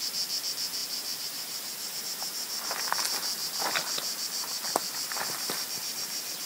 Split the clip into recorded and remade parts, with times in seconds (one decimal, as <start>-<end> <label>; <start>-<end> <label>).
0.0-0.8 recorded; 0.8-2.0 remade; 2.0-3.4 recorded; 3.4-5.8 remade; 5.8-6.4 recorded